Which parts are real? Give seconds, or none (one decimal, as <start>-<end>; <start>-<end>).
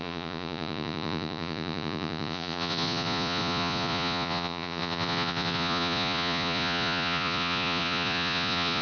none